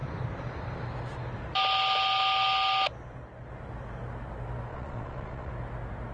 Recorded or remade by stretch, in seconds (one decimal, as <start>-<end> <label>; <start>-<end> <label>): 0.0-4.7 recorded; 4.7-5.5 remade; 5.5-6.1 recorded